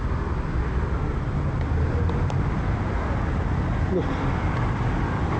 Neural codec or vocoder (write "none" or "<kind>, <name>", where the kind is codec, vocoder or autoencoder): none